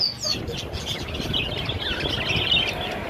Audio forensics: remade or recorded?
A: recorded